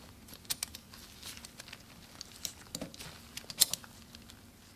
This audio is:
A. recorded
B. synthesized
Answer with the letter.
A